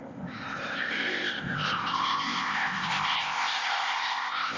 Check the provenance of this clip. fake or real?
fake